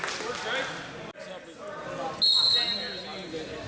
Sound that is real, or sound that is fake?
real